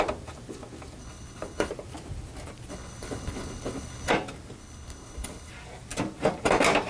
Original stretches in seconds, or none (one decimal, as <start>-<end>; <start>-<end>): 0.0-1.0; 1.7-2.7; 4.1-4.6; 5.5-6.9